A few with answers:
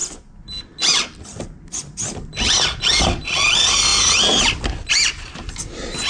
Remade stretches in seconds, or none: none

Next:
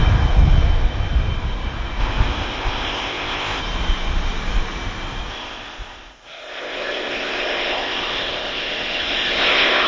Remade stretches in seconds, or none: 2.0-3.6 (codec, ZipCodec); 5.3-9.9

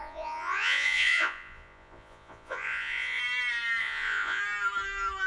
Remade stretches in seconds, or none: 0.0-3.2 (vocoder, Vocos); 3.8-4.4